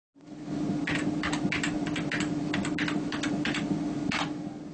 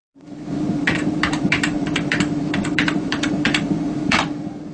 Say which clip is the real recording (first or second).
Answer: first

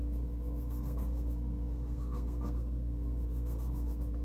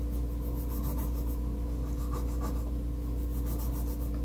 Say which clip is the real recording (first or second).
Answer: second